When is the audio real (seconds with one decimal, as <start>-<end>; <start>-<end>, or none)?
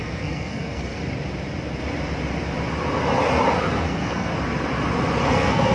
1.0-3.8; 4.3-5.2